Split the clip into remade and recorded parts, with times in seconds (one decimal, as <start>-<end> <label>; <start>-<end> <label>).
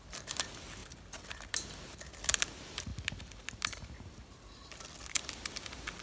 0.0-6.0 recorded